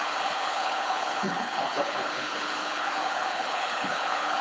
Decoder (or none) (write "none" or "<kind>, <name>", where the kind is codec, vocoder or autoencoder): codec, HILCodec